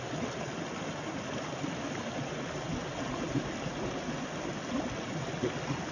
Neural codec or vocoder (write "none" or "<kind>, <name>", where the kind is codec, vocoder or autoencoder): none